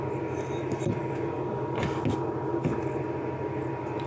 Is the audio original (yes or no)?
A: yes